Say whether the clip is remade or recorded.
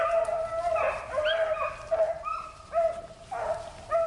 recorded